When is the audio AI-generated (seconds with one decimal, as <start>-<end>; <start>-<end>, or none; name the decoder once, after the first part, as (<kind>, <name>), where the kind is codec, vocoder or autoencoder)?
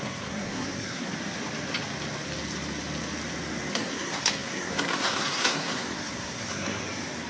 0.0-1.1 (codec, SNAC); 3.7-6.8